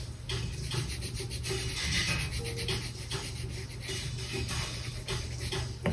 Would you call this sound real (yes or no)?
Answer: yes